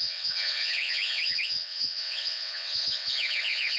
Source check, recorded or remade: remade